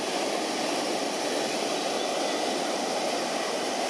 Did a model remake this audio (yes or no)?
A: no